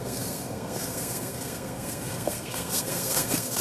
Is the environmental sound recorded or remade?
remade